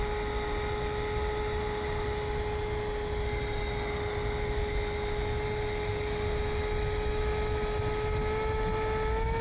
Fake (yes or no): no